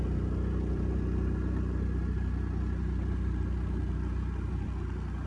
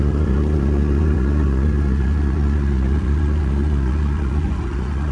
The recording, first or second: first